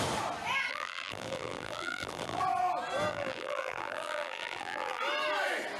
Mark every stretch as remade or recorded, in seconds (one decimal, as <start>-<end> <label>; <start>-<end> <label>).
0.0-0.7 recorded; 0.7-2.4 remade; 2.4-3.1 recorded; 3.1-5.0 remade; 5.0-5.8 recorded